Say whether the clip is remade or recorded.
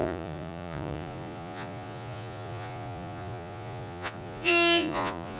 remade